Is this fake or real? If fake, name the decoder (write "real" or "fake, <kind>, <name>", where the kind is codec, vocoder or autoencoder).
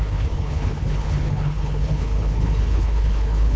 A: fake, codec, HILCodec